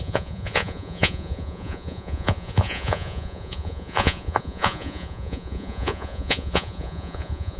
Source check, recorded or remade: remade